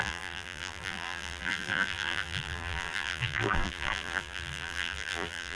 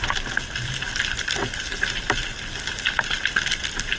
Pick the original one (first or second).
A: second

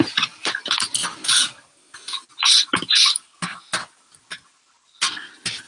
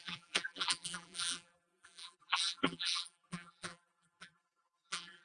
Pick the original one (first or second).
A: first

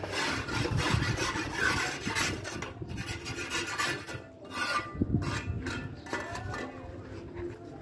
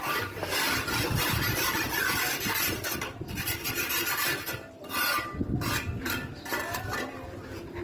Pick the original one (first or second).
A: first